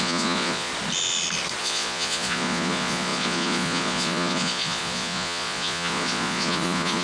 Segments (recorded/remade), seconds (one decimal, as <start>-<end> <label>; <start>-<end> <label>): 0.0-0.7 remade; 0.7-1.6 recorded; 1.6-7.0 remade